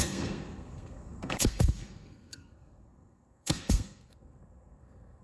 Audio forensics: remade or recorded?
remade